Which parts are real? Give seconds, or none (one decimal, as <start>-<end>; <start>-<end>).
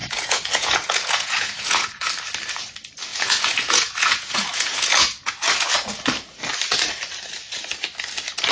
2.1-3.1; 5.7-8.5